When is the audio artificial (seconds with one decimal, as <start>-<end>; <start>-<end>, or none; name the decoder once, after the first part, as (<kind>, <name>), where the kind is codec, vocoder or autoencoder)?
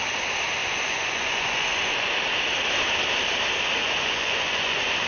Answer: 0.6-2.1 (vocoder, Vocos); 3.8-5.1